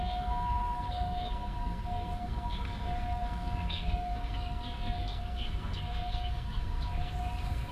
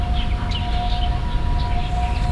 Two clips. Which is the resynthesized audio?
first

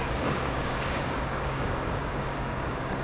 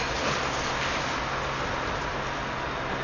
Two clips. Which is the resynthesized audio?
first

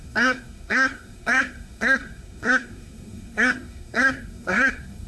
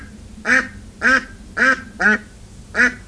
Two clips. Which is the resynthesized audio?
first